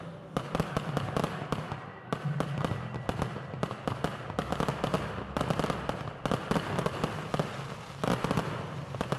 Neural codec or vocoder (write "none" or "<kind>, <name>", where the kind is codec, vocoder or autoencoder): none